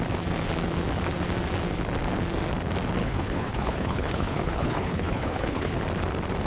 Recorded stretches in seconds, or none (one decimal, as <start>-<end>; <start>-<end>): 0.0-3.0; 5.8-6.5